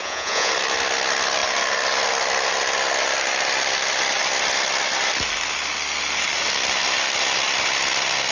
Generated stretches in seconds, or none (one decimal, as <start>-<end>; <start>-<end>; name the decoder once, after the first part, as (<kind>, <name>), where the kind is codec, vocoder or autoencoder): 0.0-0.5 (vocoder, Vocos)